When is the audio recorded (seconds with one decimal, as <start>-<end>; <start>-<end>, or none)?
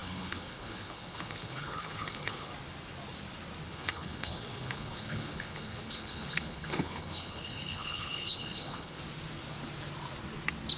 2.5-3.7; 9.0-10.8